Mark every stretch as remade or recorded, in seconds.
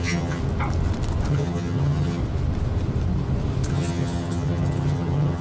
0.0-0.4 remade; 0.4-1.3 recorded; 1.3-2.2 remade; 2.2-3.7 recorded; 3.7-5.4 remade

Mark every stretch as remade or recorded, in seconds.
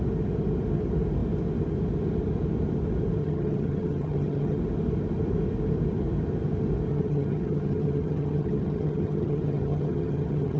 0.0-3.2 recorded; 3.2-4.6 remade; 4.6-6.9 recorded; 6.9-10.6 remade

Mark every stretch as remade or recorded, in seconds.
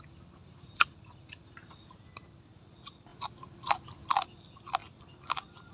0.0-5.7 recorded